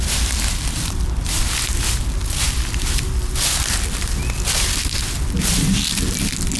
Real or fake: real